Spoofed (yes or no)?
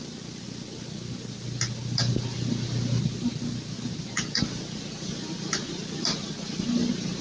no